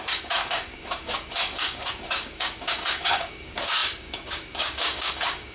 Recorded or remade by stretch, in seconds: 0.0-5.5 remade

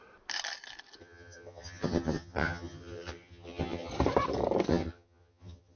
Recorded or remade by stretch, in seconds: 0.0-1.0 recorded; 1.0-3.9 remade; 3.9-4.7 recorded; 4.7-5.8 remade